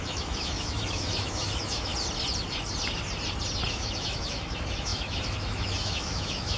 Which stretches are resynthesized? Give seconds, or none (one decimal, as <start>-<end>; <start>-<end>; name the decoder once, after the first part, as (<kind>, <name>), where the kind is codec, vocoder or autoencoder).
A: 0.0-1.9 (autoencoder, DAC-VAE); 3.7-6.6

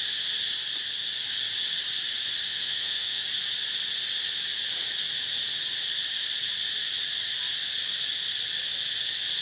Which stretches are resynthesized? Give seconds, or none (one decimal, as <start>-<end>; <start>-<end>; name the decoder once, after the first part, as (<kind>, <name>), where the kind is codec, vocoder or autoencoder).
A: 2.5-3.2 (autoencoder, DAC-VAE)

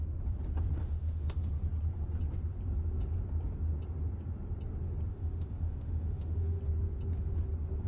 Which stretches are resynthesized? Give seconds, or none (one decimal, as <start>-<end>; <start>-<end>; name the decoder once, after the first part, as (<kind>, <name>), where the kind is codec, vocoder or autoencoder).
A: 0.8-1.5 (autoencoder, DAC-VAE); 5.1-6.6

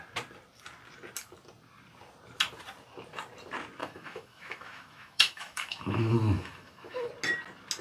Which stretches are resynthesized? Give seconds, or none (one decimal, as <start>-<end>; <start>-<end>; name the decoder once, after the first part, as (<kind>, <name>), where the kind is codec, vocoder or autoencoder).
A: 3.8-7.1 (autoencoder, DAC-VAE)

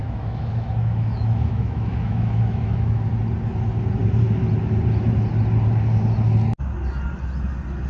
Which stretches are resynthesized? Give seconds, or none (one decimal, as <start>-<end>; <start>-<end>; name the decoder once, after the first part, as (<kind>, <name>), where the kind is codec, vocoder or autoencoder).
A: 0.0-3.1 (autoencoder, DAC-VAE)

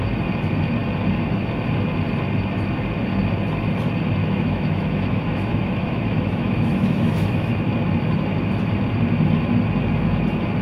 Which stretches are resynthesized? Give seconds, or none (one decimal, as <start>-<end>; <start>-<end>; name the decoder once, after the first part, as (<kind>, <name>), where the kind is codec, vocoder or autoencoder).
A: 4.2-7.6 (autoencoder, DAC-VAE)

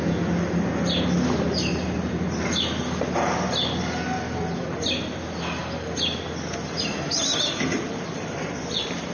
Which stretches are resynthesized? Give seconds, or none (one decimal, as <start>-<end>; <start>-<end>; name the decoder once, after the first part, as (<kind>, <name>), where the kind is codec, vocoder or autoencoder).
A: none

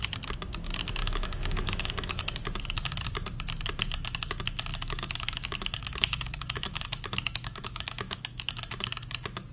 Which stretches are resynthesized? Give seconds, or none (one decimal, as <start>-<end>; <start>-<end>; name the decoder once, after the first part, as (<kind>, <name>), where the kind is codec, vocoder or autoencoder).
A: 1.0-2.2 (autoencoder, DAC-VAE); 4.7-8.5